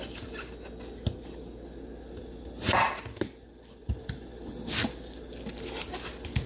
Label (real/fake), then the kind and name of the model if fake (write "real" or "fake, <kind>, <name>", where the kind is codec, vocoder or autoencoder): real